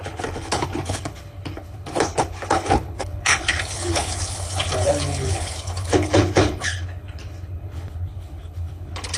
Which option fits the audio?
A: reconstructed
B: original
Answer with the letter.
A